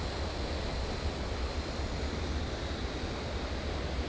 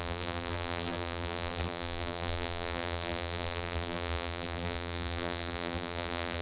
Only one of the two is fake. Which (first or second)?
second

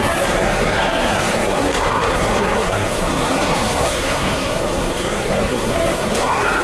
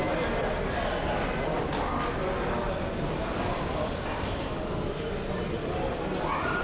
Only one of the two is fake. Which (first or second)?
first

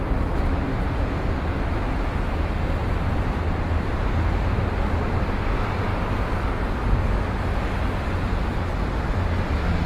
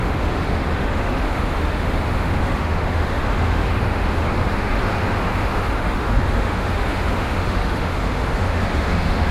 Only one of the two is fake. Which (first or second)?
second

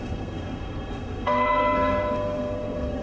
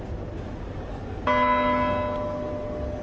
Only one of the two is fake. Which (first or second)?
first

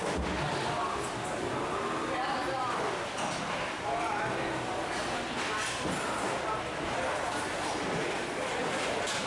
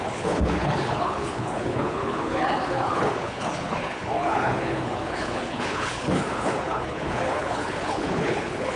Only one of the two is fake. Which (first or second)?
second